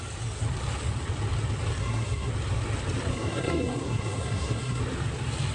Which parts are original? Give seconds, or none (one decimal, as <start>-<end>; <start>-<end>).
0.0-1.8; 2.3-3.1; 4.8-5.5